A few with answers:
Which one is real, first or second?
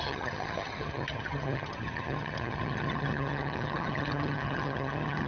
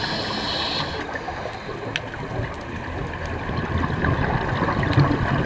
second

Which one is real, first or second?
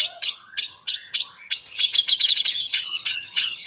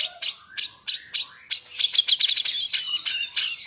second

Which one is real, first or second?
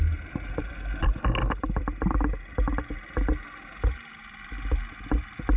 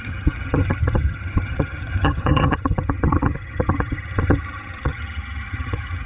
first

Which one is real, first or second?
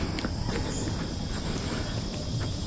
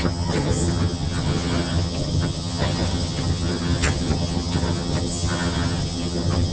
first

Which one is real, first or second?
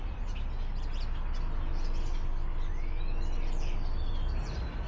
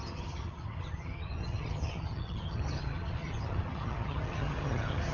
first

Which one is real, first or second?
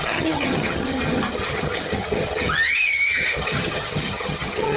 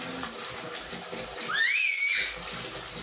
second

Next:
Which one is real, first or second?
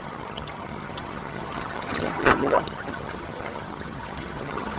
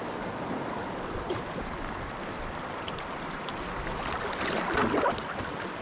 second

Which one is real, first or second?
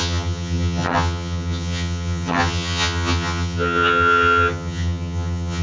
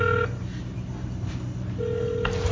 second